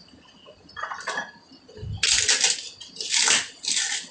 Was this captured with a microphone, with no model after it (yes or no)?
yes